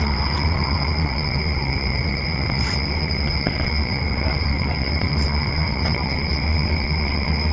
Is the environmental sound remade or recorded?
remade